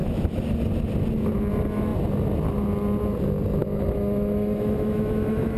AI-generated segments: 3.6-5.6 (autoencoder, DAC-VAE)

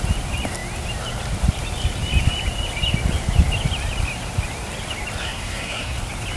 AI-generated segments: 5.2-6.0 (codec, SNAC)

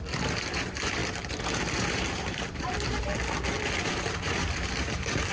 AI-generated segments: 0.0-3.1 (vocoder, BigVGAN v2); 3.8-5.3

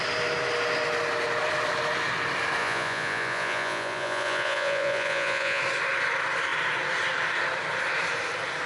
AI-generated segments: 2.6-5.6 (vocoder, Vocos)

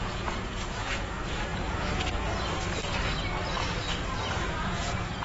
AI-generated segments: 0.0-1.5 (vocoder, Vocos); 4.4-5.2